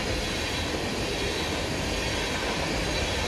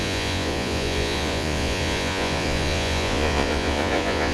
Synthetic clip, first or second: second